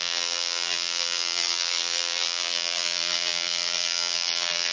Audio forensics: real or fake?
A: fake